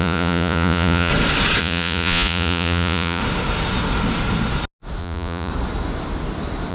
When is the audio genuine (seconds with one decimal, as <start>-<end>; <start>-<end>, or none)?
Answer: 1.1-1.6; 3.2-5.0; 5.5-6.7